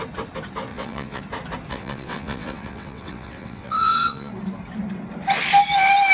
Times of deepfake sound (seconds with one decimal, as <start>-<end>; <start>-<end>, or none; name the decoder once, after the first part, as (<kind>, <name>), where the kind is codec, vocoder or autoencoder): 0.7-1.2 (vocoder, WaveNeXt); 1.7-4.3